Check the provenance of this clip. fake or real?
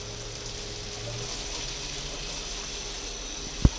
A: real